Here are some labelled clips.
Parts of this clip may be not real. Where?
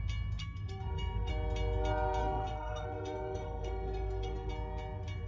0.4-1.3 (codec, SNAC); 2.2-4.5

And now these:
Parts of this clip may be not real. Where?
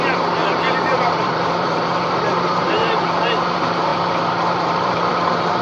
0.0-3.9 (vocoder, BigVGAN v2); 4.5-5.6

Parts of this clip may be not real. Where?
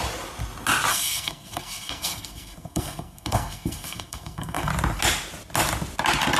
0.9-4.7 (codec, SNAC)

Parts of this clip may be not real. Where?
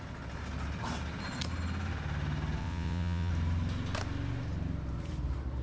2.6-3.3 (vocoder, WaveNeXt)